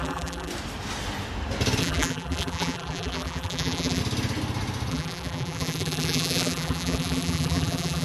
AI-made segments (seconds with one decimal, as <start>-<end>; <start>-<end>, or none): 0.0-0.5; 1.8-4.0; 4.9-8.0